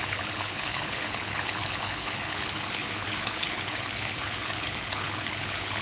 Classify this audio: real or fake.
fake